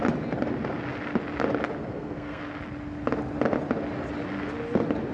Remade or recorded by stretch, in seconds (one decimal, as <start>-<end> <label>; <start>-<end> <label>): 0.0-1.8 recorded; 1.8-2.4 remade; 2.4-5.1 recorded